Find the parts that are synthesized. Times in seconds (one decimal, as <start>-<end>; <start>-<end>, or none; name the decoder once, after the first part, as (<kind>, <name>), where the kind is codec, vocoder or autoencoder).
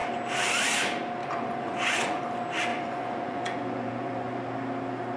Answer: 1.2-2.2 (vocoder, Vocos); 2.7-4.4